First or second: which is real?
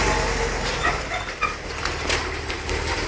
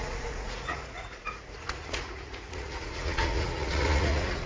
first